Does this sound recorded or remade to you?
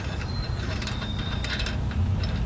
recorded